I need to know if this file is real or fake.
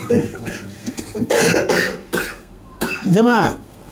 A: fake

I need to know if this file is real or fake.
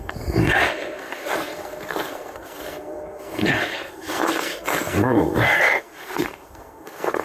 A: fake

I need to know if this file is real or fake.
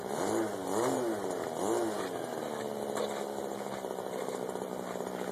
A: real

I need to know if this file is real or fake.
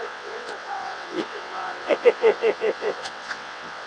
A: fake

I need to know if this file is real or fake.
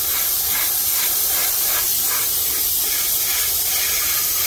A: real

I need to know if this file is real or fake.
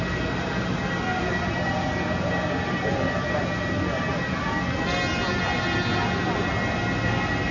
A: real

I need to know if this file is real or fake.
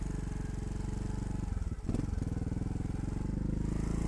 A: real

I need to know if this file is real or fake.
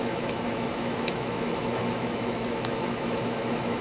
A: fake